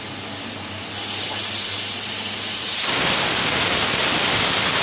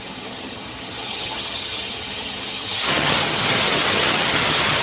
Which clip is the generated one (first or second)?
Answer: second